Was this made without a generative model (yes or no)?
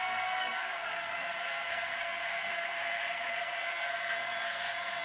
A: no